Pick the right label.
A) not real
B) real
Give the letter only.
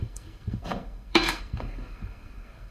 A